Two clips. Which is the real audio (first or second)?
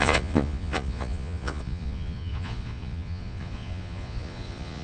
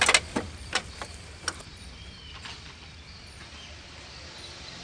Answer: second